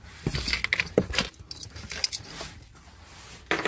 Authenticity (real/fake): real